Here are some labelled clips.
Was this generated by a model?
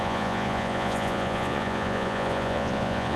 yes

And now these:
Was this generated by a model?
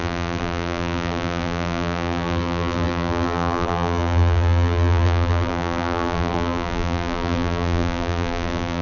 yes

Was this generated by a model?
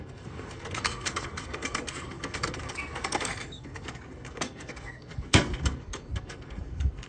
yes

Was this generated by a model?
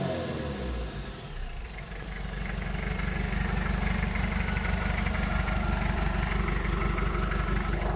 no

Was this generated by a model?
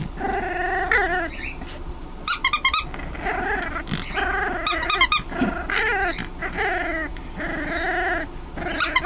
no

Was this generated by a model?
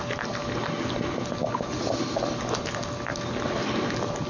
no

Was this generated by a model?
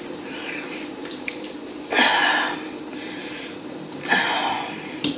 yes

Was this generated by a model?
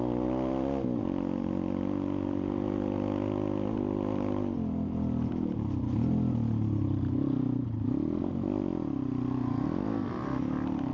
no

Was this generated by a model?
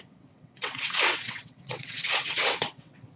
yes